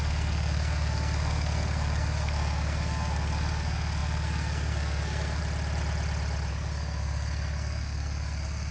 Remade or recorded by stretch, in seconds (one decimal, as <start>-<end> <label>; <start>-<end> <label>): 0.0-5.4 remade; 5.4-6.5 recorded; 6.5-8.7 remade